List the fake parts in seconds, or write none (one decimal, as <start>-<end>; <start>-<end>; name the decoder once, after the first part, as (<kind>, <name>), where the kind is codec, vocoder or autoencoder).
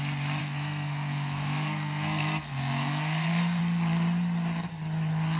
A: 0.4-3.6 (codec, SNAC)